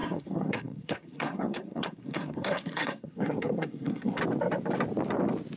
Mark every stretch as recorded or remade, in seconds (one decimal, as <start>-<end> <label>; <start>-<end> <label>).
0.0-4.2 remade; 4.2-5.6 recorded